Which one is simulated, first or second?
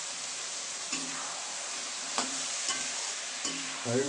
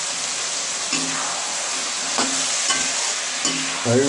first